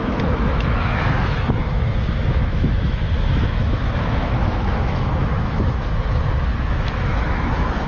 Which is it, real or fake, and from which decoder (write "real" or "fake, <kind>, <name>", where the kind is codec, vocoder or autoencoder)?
fake, autoencoder, DAC-VAE